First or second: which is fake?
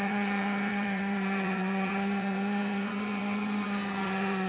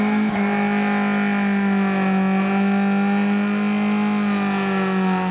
first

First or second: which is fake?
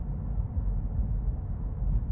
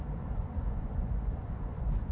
second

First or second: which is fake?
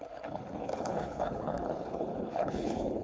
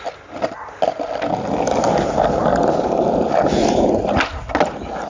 first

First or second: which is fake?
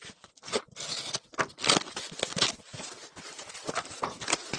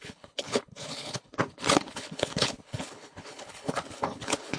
second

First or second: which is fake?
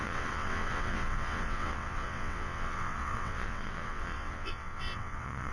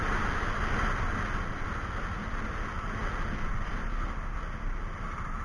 first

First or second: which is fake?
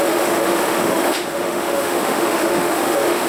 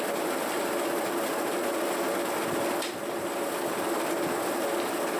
first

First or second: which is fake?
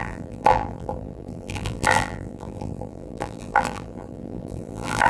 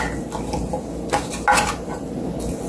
first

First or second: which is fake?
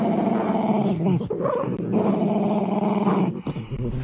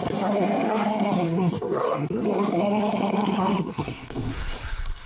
second